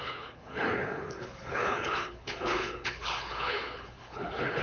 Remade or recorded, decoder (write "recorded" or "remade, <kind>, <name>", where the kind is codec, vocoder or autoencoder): remade, codec, HILCodec